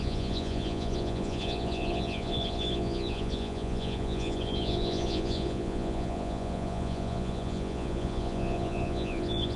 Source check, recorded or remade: remade